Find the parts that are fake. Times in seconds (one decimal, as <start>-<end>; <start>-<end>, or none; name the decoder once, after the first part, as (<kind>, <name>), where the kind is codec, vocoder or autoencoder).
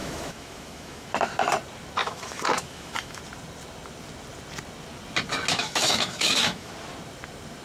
0.0-1.1 (autoencoder, DAC-VAE); 2.0-3.2; 5.5-6.7